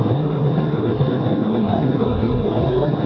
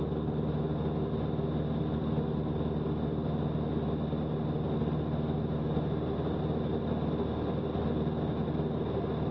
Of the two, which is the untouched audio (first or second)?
second